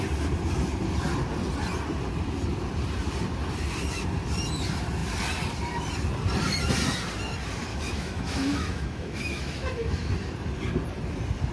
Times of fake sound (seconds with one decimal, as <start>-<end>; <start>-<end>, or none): 7.7-10.1